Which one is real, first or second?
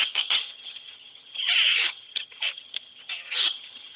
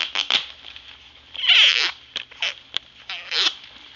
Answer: second